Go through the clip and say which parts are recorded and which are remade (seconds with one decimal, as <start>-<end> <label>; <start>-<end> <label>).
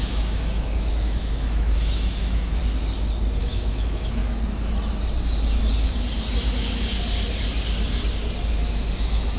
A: 0.0-2.6 remade; 2.6-3.4 recorded; 3.4-4.2 remade; 4.2-9.0 recorded; 9.0-9.4 remade